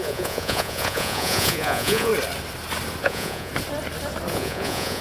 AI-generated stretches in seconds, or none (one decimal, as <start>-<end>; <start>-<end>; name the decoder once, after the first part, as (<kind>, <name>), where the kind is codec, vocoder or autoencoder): 0.0-2.1 (vocoder, Vocos); 3.0-3.5; 4.3-5.0